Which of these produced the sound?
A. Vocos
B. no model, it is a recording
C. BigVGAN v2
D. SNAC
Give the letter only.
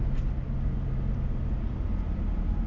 B